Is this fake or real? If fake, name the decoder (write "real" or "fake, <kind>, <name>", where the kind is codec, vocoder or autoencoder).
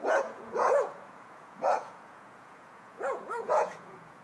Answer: fake, vocoder, Vocos